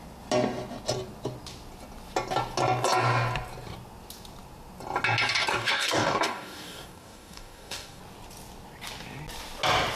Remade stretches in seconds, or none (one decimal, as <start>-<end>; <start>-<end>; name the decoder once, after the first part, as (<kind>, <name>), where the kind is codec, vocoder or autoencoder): 5.5-8.0 (codec, DAC)